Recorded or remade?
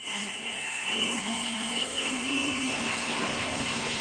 remade